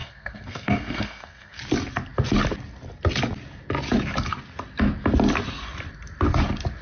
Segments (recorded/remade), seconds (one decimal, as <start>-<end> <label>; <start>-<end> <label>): 0.0-1.6 remade; 1.6-6.8 recorded